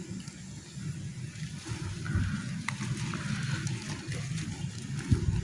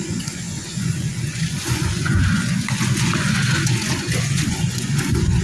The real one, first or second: first